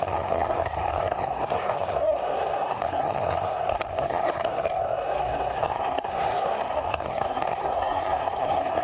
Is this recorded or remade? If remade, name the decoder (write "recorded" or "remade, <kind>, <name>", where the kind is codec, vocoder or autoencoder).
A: remade, codec, SNAC